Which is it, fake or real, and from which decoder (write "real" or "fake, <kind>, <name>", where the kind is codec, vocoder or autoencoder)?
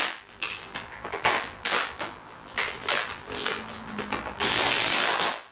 fake, vocoder, BigVGAN v2